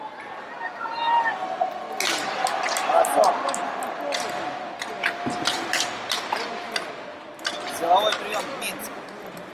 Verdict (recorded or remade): recorded